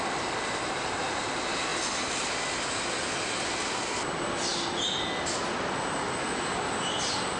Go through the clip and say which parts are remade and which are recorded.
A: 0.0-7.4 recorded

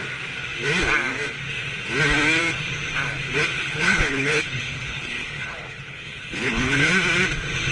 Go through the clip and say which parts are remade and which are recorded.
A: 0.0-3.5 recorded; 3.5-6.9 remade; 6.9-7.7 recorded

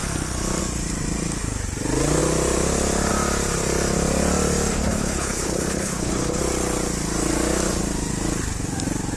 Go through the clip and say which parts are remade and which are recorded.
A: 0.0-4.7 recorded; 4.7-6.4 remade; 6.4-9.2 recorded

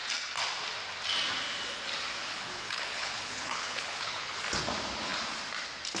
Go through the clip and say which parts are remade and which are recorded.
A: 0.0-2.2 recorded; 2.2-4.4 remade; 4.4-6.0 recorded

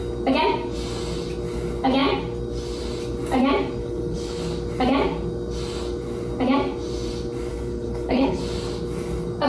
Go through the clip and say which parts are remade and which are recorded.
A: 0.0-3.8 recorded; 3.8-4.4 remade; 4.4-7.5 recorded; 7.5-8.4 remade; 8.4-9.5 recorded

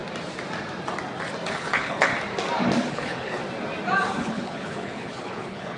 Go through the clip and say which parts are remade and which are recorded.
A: 0.0-1.5 recorded; 1.5-2.1 remade; 2.1-2.9 recorded; 2.9-3.4 remade; 3.4-4.2 recorded; 4.2-5.8 remade

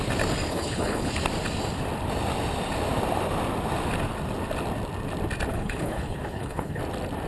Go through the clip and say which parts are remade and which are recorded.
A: 0.0-0.5 recorded; 0.5-1.1 remade; 1.1-5.5 recorded; 5.5-6.8 remade; 6.8-7.3 recorded